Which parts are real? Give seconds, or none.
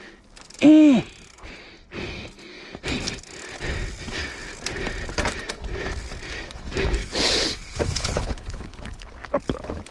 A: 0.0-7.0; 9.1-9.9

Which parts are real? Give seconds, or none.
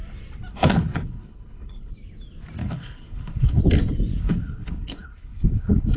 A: 0.0-0.5; 1.9-2.6; 3.6-4.2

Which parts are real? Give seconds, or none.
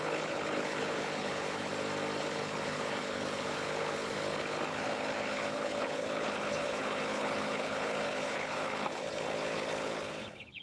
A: 1.7-2.2